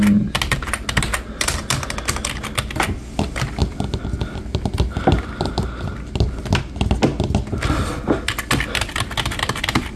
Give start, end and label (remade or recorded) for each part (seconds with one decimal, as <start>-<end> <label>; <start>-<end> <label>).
0.0-10.0 recorded